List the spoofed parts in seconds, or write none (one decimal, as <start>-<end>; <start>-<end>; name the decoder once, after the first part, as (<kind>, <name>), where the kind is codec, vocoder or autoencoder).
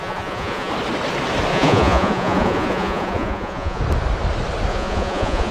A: 0.0-0.7 (vocoder, Vocos); 1.5-3.8; 4.7-5.5